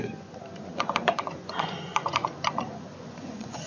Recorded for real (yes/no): no